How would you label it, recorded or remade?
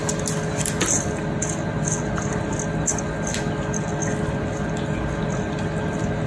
recorded